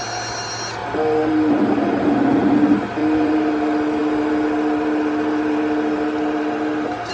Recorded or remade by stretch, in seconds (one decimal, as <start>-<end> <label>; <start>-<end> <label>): 0.0-0.8 recorded; 0.8-2.1 remade; 2.1-3.0 recorded; 3.0-3.5 remade; 3.5-7.1 recorded